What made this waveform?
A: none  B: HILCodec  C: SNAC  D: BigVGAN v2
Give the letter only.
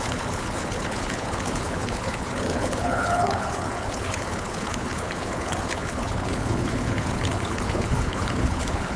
B